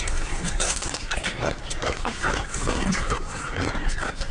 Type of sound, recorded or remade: remade